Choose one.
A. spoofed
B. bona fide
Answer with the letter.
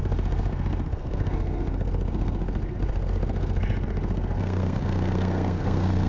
A